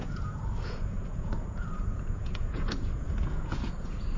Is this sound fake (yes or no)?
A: yes